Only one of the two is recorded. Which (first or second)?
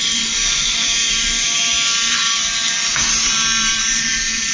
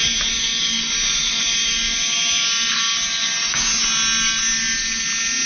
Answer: second